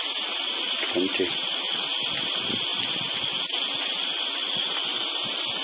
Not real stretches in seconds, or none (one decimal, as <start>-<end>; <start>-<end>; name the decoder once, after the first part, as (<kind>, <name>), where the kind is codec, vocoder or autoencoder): none